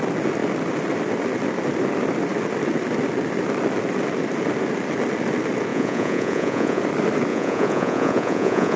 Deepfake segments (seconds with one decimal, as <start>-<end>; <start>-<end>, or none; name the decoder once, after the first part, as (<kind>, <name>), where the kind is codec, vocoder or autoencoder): 5.7-6.8 (vocoder, Vocos); 7.3-8.8